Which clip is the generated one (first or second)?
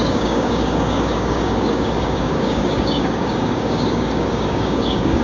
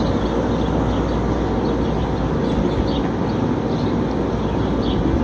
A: first